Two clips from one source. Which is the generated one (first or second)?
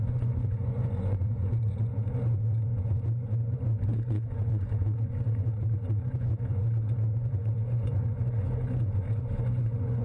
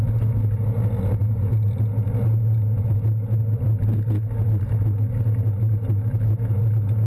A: first